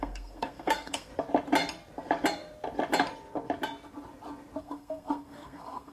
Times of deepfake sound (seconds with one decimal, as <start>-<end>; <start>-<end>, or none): 0.0-1.1; 4.6-5.9